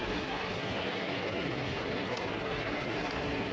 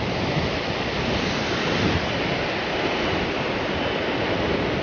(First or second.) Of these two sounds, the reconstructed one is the first